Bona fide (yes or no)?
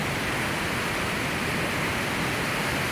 yes